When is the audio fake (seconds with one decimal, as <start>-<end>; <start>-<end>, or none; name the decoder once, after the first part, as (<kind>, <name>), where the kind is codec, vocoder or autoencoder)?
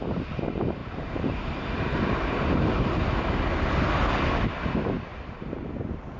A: 0.8-2.9 (vocoder, BigVGAN v2); 5.1-6.2